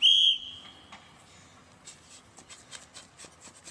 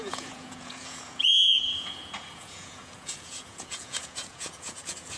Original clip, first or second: first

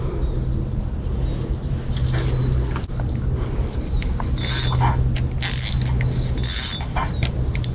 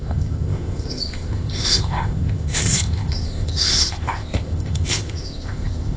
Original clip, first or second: first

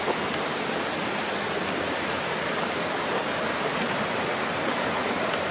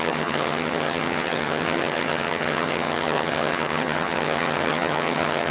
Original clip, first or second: first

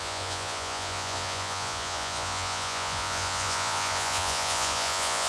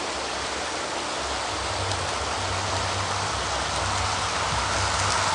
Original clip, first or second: second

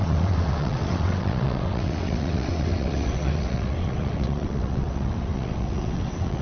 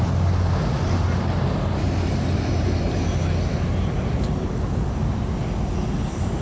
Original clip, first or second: second